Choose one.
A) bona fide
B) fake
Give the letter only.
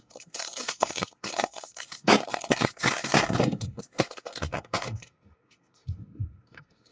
B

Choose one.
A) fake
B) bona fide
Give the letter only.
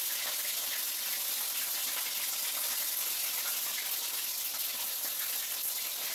B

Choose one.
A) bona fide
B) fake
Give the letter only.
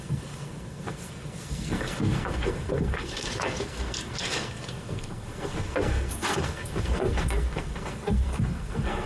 B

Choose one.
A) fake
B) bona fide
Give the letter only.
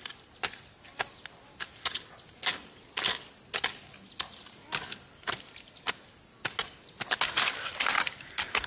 B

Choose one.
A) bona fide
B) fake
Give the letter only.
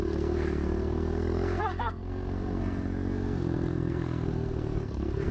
B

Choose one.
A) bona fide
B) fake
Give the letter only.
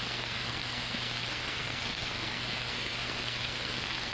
B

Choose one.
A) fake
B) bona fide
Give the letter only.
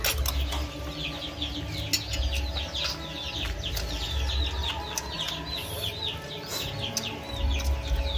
B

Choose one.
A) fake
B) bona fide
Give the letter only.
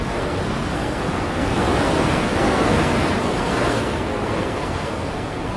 A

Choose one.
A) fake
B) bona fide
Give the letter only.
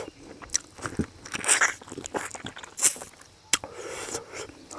B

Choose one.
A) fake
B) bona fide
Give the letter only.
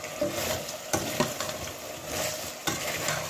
B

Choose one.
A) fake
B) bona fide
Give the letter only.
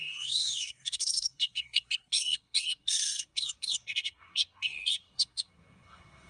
A